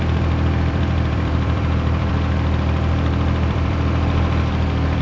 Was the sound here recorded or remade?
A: remade